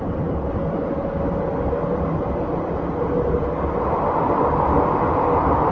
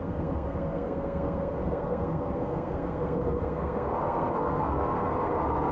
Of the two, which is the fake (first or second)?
second